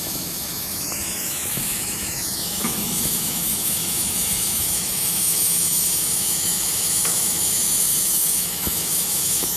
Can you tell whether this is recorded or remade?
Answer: remade